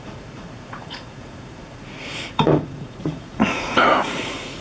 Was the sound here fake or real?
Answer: fake